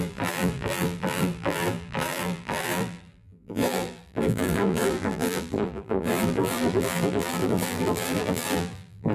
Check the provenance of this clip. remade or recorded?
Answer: remade